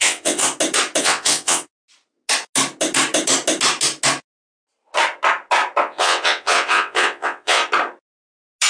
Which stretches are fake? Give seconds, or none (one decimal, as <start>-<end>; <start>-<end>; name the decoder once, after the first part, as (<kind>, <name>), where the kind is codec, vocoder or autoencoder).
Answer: 0.0-0.4 (vocoder, WaveNeXt); 1.0-1.7; 5.8-7.6